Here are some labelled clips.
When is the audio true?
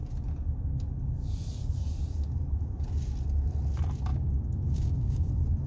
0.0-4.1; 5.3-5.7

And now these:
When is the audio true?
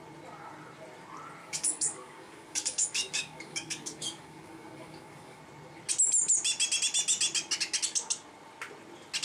0.0-1.4; 5.4-9.2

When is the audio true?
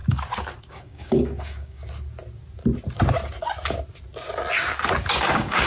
0.0-0.7; 1.8-5.1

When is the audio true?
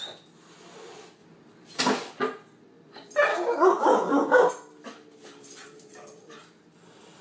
0.0-3.3; 4.5-7.2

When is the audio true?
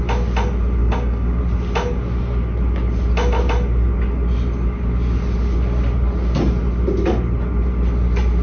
0.0-0.8; 1.4-8.4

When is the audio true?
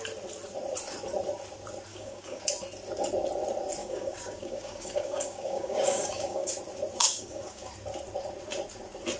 0.0-1.9; 2.4-3.8; 6.5-7.0; 7.7-9.2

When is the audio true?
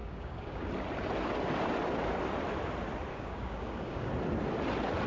0.7-3.1; 4.1-5.1